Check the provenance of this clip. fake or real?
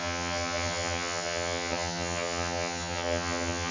fake